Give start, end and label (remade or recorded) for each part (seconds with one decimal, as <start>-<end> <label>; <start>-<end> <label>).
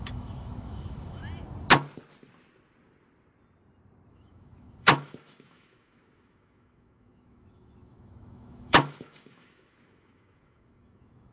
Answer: 0.0-1.2 remade; 1.2-4.1 recorded; 4.1-11.3 remade